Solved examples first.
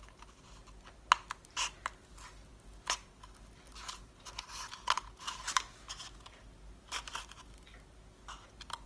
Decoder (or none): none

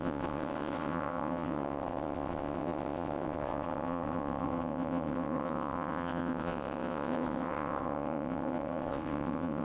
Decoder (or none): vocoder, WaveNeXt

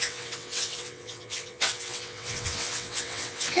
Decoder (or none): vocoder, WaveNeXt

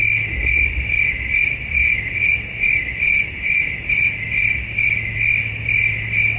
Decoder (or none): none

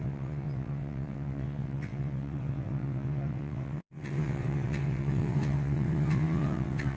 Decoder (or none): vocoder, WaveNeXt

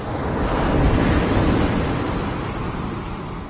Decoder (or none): none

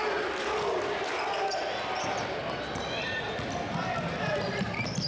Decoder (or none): none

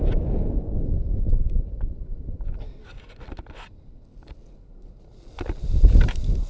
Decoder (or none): none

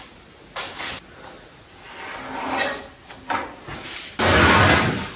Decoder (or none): none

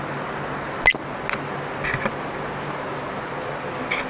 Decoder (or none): none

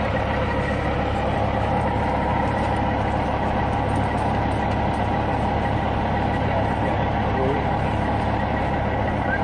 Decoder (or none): none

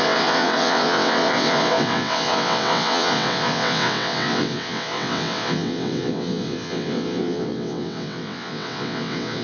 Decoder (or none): vocoder, WaveNeXt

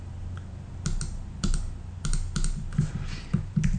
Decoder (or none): none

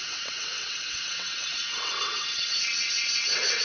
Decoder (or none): vocoder, WaveNeXt